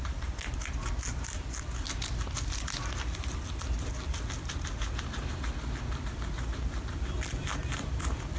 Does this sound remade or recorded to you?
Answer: recorded